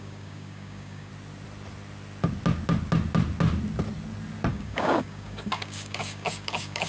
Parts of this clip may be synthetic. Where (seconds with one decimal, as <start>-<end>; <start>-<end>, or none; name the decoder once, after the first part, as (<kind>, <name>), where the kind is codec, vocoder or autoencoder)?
0.0-1.1 (codec, DAC); 4.5-6.9